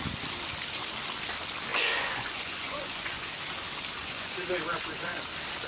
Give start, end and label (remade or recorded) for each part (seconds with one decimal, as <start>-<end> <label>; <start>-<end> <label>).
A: 0.0-1.7 recorded; 1.7-3.3 remade; 3.3-4.0 recorded; 4.0-5.2 remade; 5.2-5.7 recorded